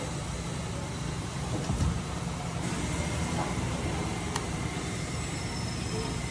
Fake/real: fake